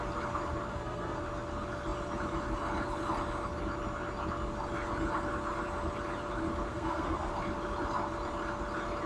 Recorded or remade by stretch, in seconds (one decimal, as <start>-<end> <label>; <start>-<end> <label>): 0.0-0.7 recorded; 0.7-1.2 remade; 1.2-6.7 recorded; 6.7-7.3 remade; 7.3-9.1 recorded